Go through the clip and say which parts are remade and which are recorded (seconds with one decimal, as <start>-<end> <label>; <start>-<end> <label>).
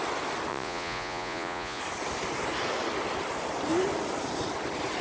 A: 0.0-0.5 recorded; 0.5-1.8 remade; 1.8-5.0 recorded